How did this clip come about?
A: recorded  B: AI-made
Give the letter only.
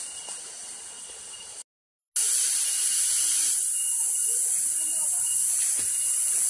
A